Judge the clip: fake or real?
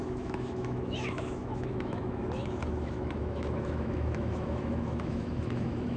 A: fake